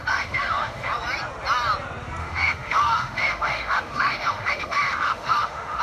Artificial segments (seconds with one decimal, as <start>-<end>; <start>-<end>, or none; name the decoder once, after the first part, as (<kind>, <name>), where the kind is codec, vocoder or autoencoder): 0.0-0.9 (autoencoder, DAC-VAE); 2.2-5.8